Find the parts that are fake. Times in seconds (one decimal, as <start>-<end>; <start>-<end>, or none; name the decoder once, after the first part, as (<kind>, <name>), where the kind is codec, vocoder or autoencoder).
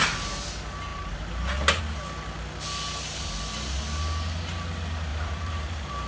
0.9-1.8 (vocoder, BigVGAN v2); 5.1-6.1